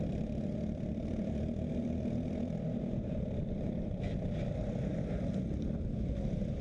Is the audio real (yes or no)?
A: no